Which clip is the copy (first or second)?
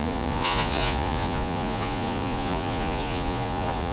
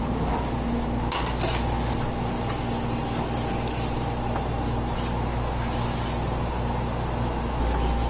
first